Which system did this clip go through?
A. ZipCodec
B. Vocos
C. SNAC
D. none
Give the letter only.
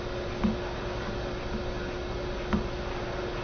D